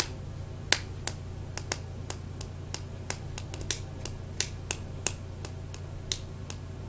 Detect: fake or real real